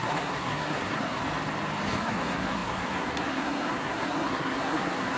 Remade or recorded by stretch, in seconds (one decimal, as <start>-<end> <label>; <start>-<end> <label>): 0.0-1.2 remade; 1.2-2.0 recorded; 2.0-5.2 remade